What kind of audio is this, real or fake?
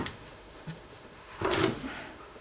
fake